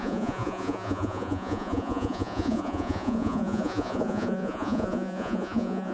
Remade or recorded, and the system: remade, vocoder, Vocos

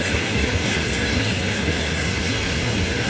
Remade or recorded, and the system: remade, codec, SNAC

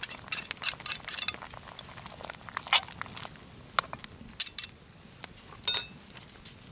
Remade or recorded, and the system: recorded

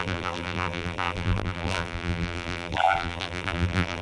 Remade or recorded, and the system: remade, vocoder, BigVGAN v2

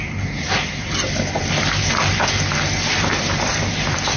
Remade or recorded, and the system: remade, vocoder, BigVGAN v2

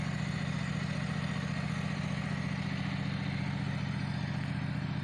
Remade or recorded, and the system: recorded